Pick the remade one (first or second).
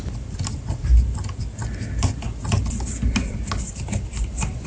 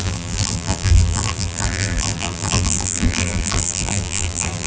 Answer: second